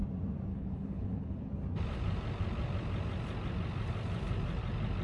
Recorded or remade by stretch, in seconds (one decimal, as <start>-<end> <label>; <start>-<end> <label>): 0.0-0.5 recorded; 0.5-1.5 remade; 1.5-5.0 recorded